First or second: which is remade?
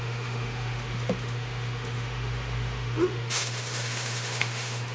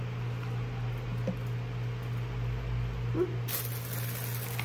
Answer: first